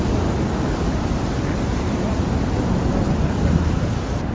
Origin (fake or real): real